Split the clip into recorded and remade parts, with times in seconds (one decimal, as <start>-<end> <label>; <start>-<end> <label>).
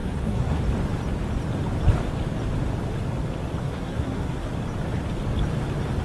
0.0-0.6 remade; 0.6-3.6 recorded; 3.6-4.5 remade; 4.5-6.0 recorded